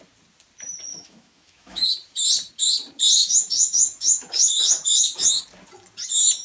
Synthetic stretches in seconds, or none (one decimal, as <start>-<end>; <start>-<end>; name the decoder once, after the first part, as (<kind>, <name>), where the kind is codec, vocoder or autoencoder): 0.9-1.9 (autoencoder, DAC-VAE); 3.2-5.4